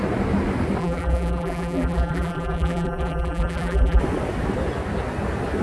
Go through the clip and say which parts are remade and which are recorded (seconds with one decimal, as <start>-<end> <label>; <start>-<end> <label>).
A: 0.0-0.8 recorded; 0.8-4.0 remade; 4.0-5.6 recorded